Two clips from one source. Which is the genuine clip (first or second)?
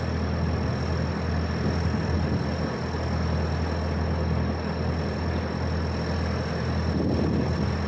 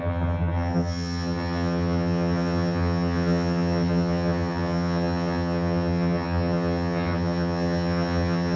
first